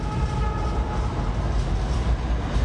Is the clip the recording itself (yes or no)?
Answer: yes